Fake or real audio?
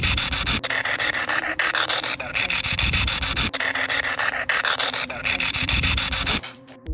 fake